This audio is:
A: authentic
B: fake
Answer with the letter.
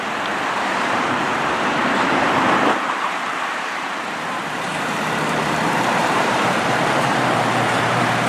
B